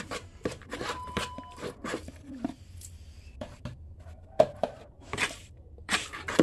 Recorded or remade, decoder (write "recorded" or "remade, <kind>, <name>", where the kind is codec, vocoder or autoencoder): remade, vocoder, BigVGAN v2